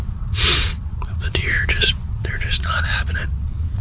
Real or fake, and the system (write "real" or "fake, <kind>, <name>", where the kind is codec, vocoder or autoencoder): fake, vocoder, WaveNeXt